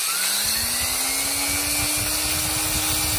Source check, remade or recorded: recorded